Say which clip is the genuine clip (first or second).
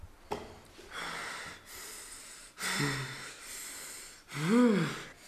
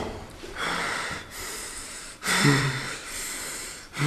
first